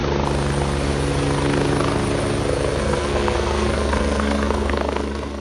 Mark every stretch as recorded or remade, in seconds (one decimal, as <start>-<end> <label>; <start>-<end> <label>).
0.0-2.8 recorded; 2.8-5.4 remade